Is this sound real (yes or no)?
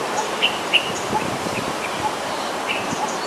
no